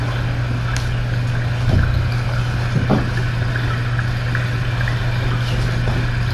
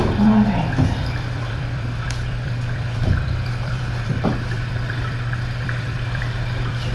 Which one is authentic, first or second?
first